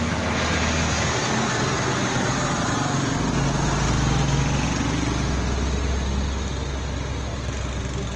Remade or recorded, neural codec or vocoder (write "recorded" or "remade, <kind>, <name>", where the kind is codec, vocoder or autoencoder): recorded